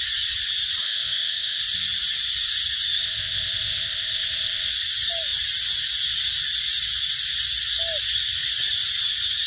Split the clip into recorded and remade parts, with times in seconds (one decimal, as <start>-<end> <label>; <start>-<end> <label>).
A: 0.0-0.8 recorded; 0.8-1.6 remade; 1.6-3.0 recorded; 3.0-4.7 remade; 4.7-9.5 recorded